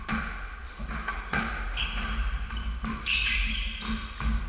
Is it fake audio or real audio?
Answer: real